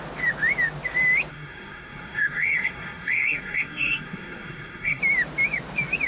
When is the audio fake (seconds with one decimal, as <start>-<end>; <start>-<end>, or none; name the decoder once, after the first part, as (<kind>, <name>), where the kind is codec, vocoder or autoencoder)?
1.3-5.0 (codec, SNAC)